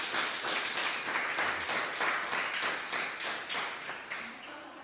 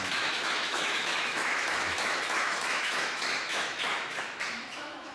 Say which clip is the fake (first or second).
second